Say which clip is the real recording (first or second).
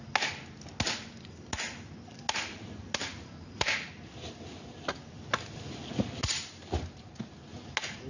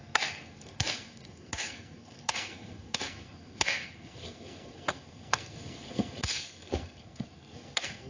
first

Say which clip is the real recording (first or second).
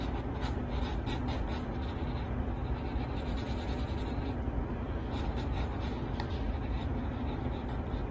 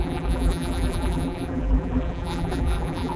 first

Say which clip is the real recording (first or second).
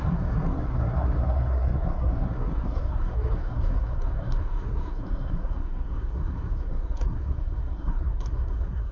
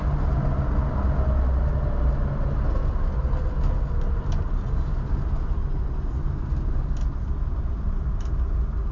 second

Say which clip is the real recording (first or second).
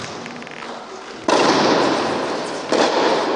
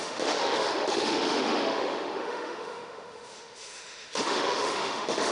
first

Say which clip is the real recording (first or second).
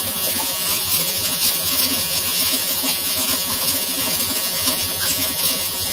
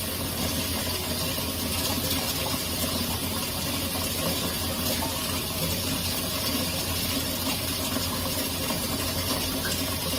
second